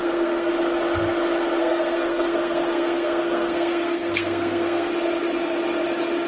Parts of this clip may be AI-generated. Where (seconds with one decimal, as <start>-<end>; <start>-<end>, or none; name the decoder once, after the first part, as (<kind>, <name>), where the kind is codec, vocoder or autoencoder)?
0.0-0.5 (codec, SNAC); 1.6-4.9